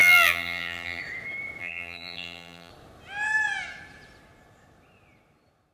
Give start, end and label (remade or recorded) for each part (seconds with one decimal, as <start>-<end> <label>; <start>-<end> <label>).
0.0-1.0 remade; 1.0-1.6 recorded; 1.6-2.7 remade; 2.7-5.7 recorded